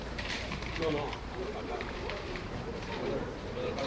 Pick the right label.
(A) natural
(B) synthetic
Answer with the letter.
B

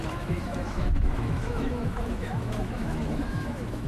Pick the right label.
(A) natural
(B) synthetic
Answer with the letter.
B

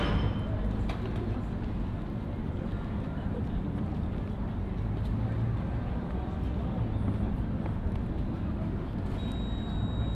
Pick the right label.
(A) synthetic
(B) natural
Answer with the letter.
B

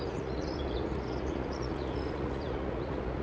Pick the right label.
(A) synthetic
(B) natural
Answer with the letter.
A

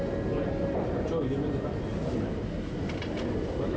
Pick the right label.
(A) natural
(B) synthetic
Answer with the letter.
A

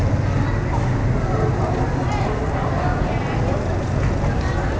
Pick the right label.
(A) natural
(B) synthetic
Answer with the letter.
A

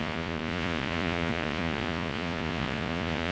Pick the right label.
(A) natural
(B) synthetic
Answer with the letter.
B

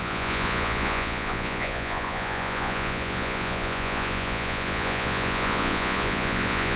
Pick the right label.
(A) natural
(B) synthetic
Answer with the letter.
B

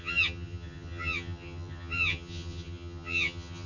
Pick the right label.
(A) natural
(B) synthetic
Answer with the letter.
B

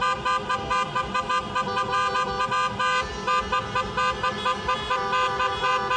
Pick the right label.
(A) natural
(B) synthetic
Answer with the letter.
A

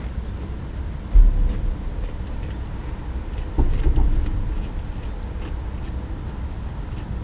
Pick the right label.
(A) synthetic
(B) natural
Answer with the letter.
B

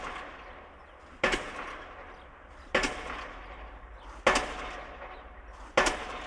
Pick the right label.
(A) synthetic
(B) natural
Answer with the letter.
B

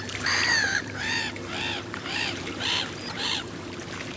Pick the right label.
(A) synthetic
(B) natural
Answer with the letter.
A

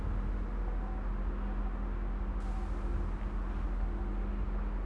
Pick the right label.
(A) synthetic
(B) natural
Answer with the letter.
B